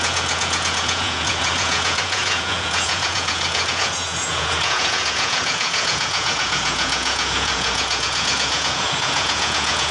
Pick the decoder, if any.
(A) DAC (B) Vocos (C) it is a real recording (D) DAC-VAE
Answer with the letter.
B